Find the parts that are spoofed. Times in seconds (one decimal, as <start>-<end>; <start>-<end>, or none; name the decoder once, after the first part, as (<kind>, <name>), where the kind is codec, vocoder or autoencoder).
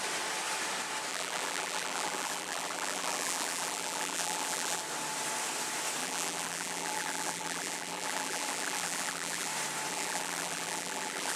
1.1-4.8 (vocoder, BigVGAN v2); 6.0-9.5; 9.9-11.4